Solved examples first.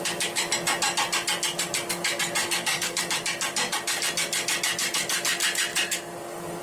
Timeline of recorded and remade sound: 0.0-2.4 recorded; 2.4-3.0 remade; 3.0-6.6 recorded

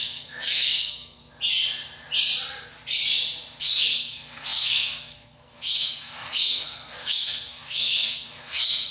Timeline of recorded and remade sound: 0.0-1.2 remade; 1.2-3.6 recorded; 3.6-8.9 remade

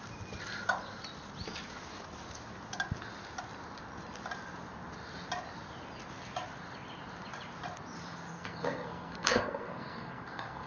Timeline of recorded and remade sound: 0.0-8.3 recorded; 8.3-10.7 remade

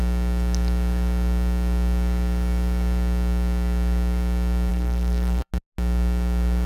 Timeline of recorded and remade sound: 0.0-4.7 recorded; 4.7-5.5 remade; 5.5-6.7 recorded

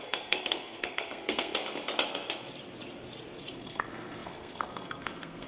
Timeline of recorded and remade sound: 0.0-1.6 remade; 1.6-3.5 recorded; 3.5-5.5 remade

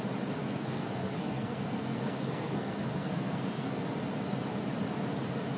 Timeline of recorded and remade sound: 0.0-0.4 recorded; 0.4-3.8 remade; 3.8-5.6 recorded

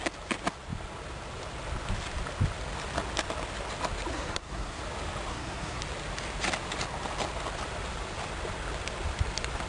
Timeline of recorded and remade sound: 0.0-4.1 recorded; 4.1-4.8 remade; 4.8-5.3 recorded; 5.3-5.8 remade; 5.8-9.7 recorded